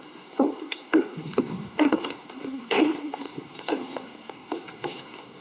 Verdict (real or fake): fake